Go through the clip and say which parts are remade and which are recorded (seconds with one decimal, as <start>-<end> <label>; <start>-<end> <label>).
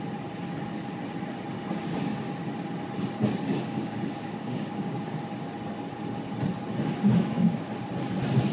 0.0-3.5 recorded; 3.5-5.1 remade; 5.1-7.1 recorded; 7.1-7.7 remade; 7.7-8.5 recorded